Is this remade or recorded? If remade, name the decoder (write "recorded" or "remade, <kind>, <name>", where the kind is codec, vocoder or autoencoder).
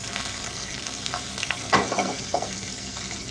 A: remade, codec, SNAC